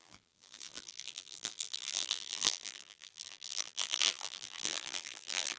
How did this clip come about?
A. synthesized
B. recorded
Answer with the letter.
A